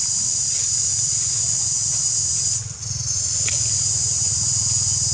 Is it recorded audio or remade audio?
recorded